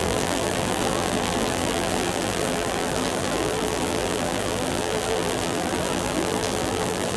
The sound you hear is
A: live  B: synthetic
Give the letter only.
B